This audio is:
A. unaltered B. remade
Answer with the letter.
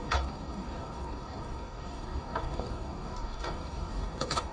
B